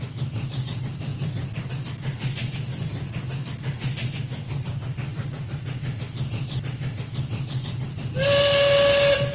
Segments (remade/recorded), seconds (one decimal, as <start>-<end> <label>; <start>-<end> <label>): 0.0-9.3 recorded